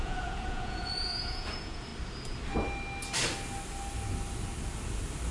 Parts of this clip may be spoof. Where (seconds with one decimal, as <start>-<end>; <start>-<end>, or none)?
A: 0.0-1.9